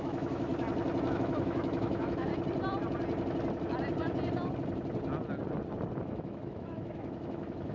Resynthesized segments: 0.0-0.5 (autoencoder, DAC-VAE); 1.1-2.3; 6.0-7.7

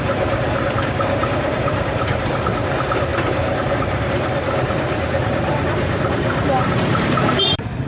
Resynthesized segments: 0.0-7.9 (vocoder, BigVGAN v2)

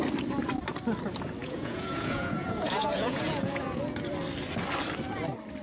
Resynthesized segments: 1.4-3.8 (vocoder, Vocos)

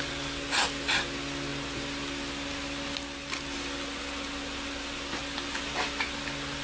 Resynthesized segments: none

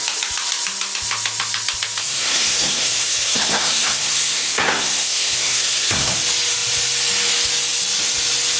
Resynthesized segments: 2.0-6.1 (codec, SNAC)

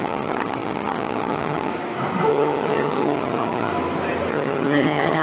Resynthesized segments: 0.0-1.7 (vocoder, HiFi-GAN); 2.3-3.7; 4.3-5.2